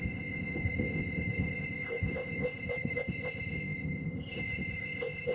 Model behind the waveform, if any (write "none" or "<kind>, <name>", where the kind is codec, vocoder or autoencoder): codec, ZipCodec